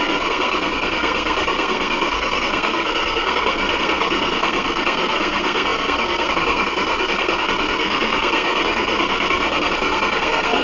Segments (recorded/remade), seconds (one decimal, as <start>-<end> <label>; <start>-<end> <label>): 0.0-10.6 remade